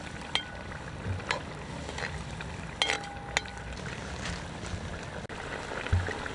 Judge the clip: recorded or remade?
recorded